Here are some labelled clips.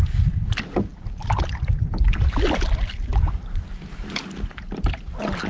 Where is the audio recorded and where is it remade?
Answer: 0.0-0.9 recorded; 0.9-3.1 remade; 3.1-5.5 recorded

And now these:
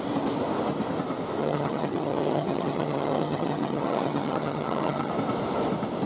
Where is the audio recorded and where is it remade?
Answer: 0.0-1.4 recorded; 1.4-5.1 remade; 5.1-6.1 recorded

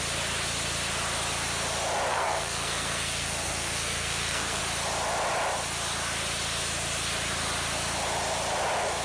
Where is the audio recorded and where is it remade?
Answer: 0.0-2.1 recorded; 2.1-4.6 remade; 4.6-9.0 recorded